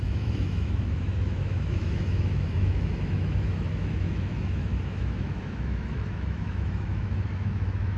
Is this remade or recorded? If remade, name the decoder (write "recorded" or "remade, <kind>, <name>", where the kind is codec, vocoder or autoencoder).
remade, autoencoder, DAC-VAE